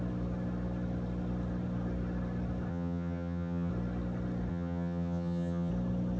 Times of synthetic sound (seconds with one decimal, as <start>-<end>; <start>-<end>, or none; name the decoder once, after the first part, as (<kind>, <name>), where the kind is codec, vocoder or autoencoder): 2.7-3.7 (vocoder, HiFi-GAN); 4.5-5.7